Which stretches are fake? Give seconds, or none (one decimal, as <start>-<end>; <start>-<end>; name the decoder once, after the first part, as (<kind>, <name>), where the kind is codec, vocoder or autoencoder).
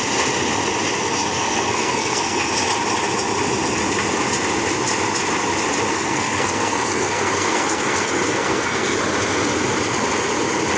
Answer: 1.3-2.5 (codec, SNAC); 5.9-9.0